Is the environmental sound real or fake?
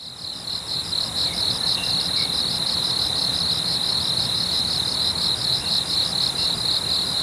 real